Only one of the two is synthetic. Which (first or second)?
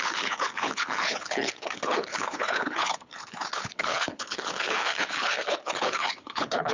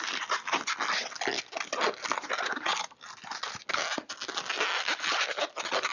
first